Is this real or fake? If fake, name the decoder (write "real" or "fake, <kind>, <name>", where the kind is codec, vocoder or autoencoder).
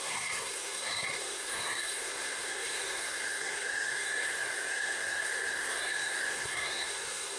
fake, codec, SNAC